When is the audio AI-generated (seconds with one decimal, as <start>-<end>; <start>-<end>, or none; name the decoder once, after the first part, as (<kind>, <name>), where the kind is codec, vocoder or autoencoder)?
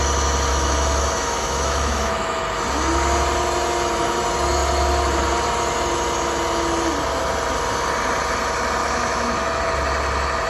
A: 0.5-2.4 (autoencoder, DAC-VAE); 8.8-9.7